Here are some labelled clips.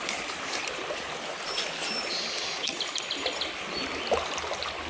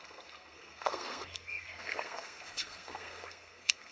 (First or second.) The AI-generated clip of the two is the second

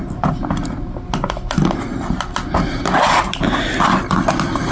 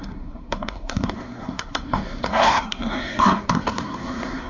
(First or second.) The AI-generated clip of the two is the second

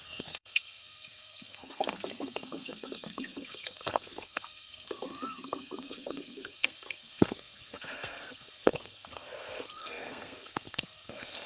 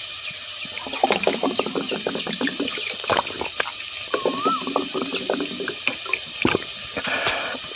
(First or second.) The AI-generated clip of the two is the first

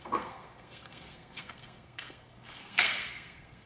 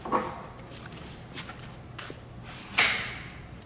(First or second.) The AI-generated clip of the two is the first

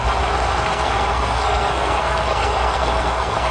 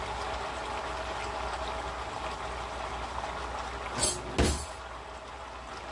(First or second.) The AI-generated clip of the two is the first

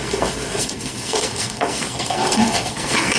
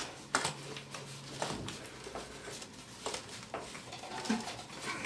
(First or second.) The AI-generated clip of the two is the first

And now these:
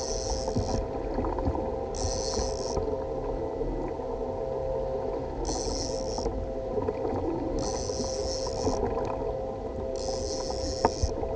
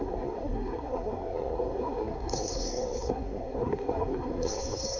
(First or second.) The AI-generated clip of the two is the second